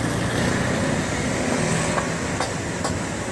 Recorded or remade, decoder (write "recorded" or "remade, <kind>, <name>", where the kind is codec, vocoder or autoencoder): recorded